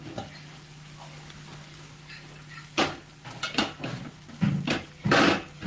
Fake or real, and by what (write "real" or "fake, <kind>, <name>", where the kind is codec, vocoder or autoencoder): real